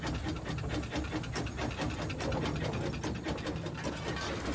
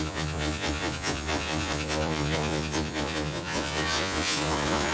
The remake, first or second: second